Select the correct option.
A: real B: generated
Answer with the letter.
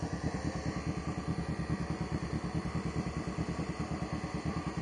A